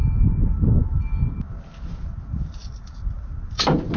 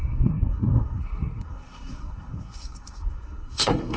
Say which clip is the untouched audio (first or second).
first